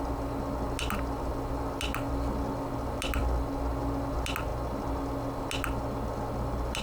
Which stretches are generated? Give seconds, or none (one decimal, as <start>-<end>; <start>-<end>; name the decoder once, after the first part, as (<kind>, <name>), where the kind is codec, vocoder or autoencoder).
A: none